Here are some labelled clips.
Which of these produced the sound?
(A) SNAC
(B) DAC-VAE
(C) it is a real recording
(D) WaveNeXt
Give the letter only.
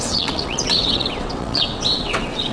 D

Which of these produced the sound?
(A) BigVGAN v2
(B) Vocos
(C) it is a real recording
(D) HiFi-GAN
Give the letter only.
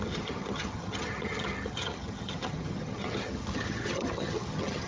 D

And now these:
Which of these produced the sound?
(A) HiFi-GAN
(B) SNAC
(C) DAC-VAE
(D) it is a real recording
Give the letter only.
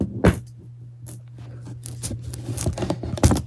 D